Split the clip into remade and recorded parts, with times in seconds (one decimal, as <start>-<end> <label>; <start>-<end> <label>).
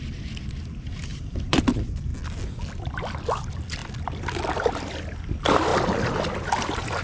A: 0.0-1.1 recorded; 1.1-1.7 remade; 1.7-3.8 recorded; 3.8-4.9 remade; 4.9-5.7 recorded; 5.7-7.0 remade